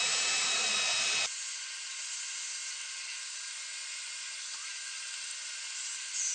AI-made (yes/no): no